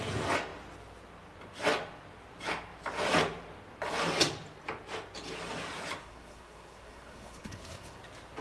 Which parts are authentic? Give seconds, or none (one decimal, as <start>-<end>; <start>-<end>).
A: 0.0-6.0; 8.0-8.4